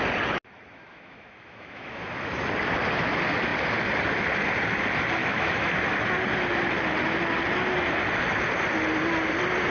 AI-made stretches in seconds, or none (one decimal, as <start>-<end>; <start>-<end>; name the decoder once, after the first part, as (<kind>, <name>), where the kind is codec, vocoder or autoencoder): 0.9-2.3 (autoencoder, DAC-VAE); 5.2-5.7